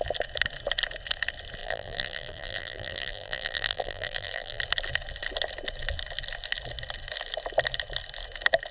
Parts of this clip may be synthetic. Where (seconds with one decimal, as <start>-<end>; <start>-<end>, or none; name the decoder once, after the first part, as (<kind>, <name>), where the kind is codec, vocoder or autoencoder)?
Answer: 1.6-4.6 (vocoder, BigVGAN v2)